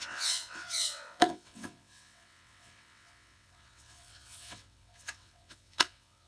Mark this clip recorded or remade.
remade